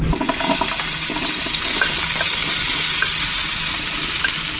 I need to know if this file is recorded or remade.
recorded